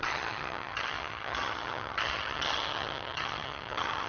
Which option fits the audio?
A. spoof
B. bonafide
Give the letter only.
A